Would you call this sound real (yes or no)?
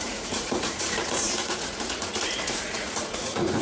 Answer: no